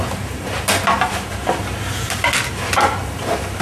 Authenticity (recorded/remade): recorded